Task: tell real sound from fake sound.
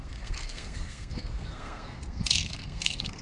fake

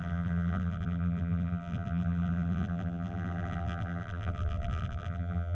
fake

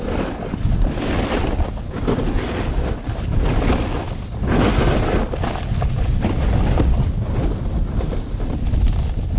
real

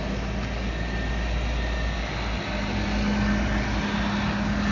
real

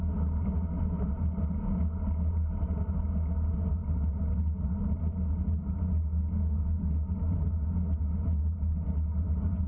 real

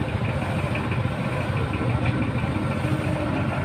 real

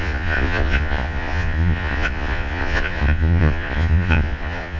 fake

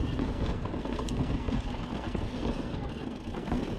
fake